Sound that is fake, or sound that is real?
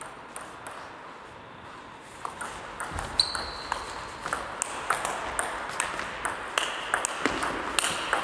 real